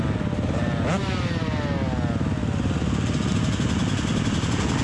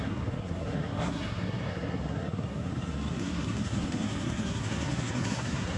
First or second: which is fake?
second